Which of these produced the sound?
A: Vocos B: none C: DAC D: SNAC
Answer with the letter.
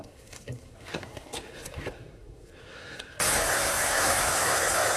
D